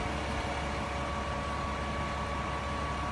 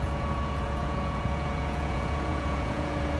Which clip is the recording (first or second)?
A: first